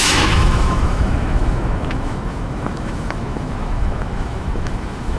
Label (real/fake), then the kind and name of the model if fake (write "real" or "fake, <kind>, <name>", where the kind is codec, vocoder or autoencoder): fake, autoencoder, DAC-VAE